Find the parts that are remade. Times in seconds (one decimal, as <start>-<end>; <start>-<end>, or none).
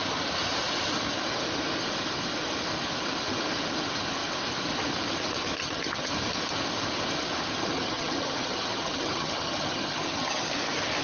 5.6-6.1; 7.6-10.5